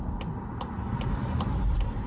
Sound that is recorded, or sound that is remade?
recorded